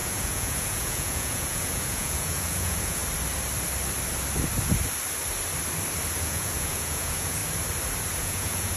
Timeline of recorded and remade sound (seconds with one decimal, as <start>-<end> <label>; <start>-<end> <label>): 0.0-3.0 remade; 3.0-6.2 recorded; 6.2-7.4 remade; 7.4-8.2 recorded; 8.2-8.8 remade